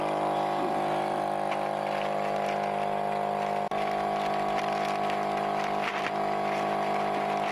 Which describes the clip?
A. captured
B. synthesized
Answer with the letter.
A